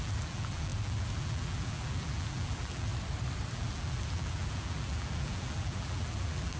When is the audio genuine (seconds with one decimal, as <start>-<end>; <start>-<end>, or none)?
2.9-3.5

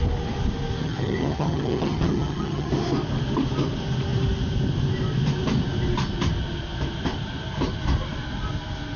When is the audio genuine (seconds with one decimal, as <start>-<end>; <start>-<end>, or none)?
0.0-0.8; 2.7-9.0